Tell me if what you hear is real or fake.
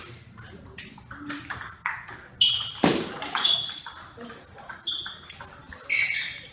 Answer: real